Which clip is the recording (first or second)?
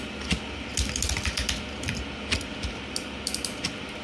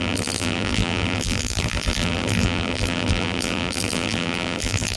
first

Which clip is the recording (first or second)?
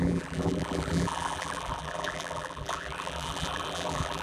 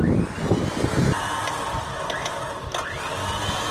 second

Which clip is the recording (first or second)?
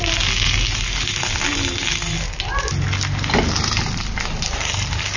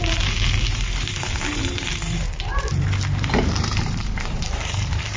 first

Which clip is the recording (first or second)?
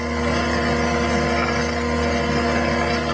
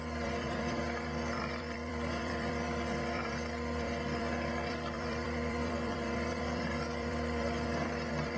first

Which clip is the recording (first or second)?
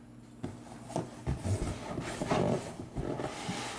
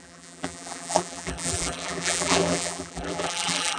first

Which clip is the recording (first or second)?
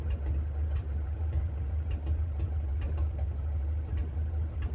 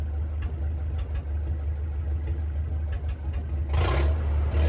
second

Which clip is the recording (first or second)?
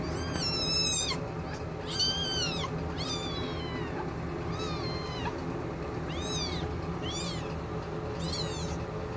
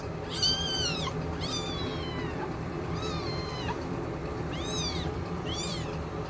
first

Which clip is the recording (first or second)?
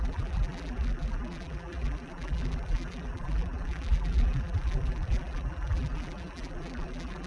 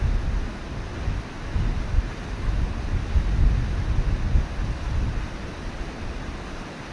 second